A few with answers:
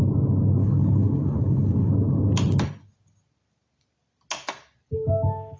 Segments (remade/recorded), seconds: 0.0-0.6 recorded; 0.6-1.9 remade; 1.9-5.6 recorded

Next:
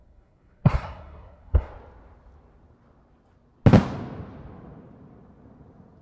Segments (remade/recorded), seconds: 0.0-1.7 remade; 1.7-6.0 recorded

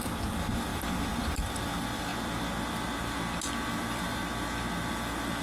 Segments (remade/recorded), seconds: 0.0-2.1 remade; 2.1-3.7 recorded; 3.7-4.2 remade; 4.2-4.9 recorded; 4.9-5.4 remade

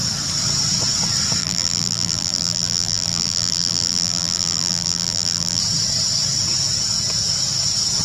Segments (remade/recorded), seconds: 0.0-1.4 recorded; 1.4-5.6 remade; 5.6-8.0 recorded

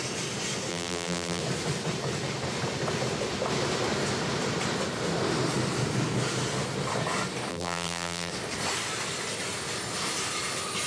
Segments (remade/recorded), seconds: 0.0-0.7 recorded; 0.7-1.4 remade; 1.4-7.5 recorded; 7.5-8.3 remade; 8.3-10.9 recorded

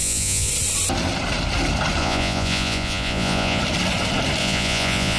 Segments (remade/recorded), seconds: 0.0-0.5 remade; 0.5-2.0 recorded; 2.0-3.6 remade; 3.6-4.4 recorded; 4.4-5.2 remade

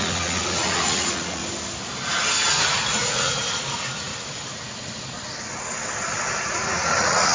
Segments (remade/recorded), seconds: 0.0-1.4 remade; 1.4-2.5 recorded; 2.5-4.1 remade; 4.1-6.4 recorded; 6.4-7.3 remade